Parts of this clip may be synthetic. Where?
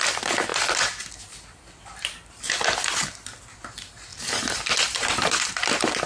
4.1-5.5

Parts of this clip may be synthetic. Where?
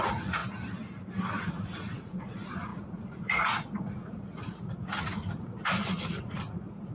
0.0-0.4; 1.4-6.9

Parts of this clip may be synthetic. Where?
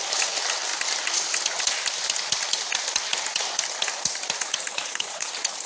4.7-5.3